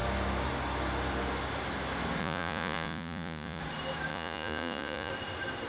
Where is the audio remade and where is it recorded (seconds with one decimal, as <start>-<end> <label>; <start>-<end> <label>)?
0.0-2.2 recorded; 2.2-3.6 remade; 3.6-4.1 recorded; 4.1-5.1 remade; 5.1-5.7 recorded